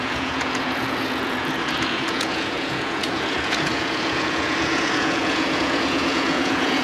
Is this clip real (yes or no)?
no